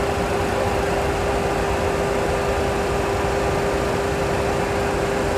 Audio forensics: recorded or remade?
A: recorded